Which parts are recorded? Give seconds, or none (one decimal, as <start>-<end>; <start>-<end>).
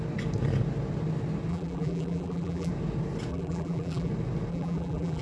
0.0-1.5; 2.7-3.3; 4.1-4.5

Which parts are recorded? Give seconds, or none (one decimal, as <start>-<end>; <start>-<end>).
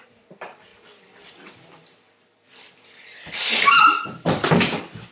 0.0-0.7; 3.8-5.1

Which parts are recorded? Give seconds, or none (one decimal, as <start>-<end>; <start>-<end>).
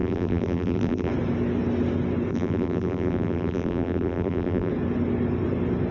1.1-2.3; 4.7-5.9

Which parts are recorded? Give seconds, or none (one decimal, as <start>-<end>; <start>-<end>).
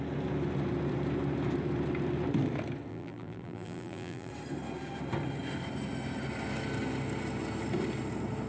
0.0-2.9; 4.3-8.5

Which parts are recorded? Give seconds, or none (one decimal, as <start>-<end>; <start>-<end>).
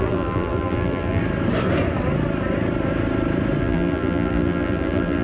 1.2-3.6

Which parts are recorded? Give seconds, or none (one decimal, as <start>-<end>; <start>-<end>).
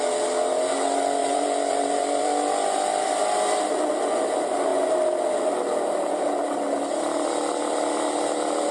0.0-1.2; 3.1-8.7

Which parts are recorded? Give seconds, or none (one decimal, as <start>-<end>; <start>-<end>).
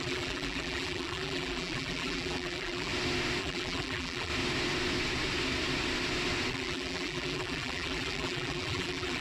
2.9-3.4; 4.3-6.5